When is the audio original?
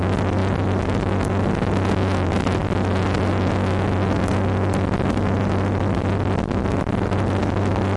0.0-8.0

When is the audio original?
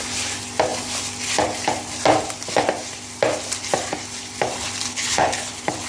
0.0-4.9; 5.5-5.9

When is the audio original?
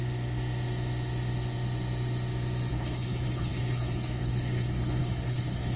0.0-2.7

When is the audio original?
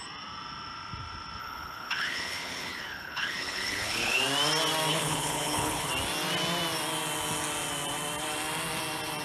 0.0-1.4; 4.2-4.9; 5.9-9.2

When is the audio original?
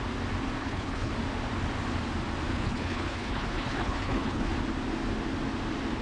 0.0-0.6; 1.1-2.5; 4.5-6.0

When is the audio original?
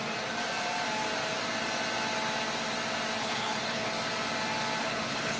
0.0-3.2; 3.9-4.8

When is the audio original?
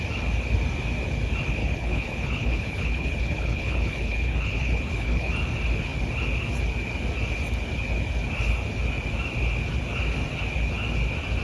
0.0-1.6; 5.3-11.4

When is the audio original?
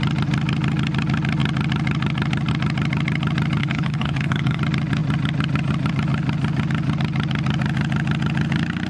0.0-3.6; 4.6-8.9